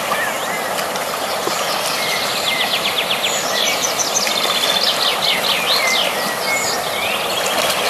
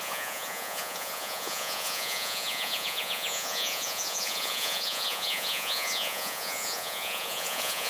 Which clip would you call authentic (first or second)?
first